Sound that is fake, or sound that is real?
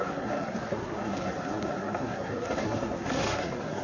fake